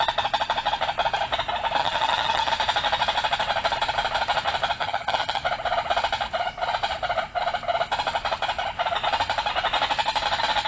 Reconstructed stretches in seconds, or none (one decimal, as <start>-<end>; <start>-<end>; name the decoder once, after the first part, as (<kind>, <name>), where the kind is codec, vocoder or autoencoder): 1.8-2.5 (vocoder, HiFi-GAN); 4.8-5.4